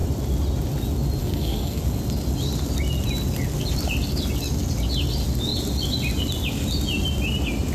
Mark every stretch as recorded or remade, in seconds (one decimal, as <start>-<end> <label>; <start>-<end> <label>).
0.0-1.2 recorded; 1.2-1.8 remade; 1.8-7.7 recorded